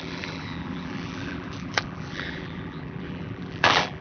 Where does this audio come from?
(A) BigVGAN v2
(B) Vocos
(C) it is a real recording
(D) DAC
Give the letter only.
A